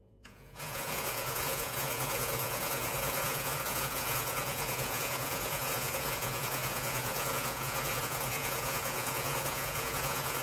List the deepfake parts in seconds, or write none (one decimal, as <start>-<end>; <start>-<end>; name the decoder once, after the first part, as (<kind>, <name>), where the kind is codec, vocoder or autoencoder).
0.0-10.4 (vocoder, Vocos)